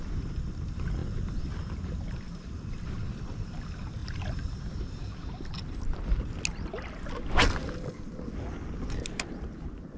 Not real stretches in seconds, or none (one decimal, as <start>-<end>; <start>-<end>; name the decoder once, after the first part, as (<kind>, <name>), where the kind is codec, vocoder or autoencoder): none